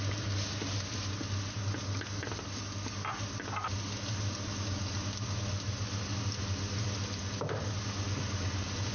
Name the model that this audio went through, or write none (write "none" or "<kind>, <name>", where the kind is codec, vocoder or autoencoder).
none